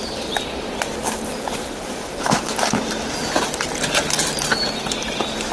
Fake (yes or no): no